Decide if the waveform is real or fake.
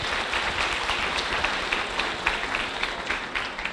real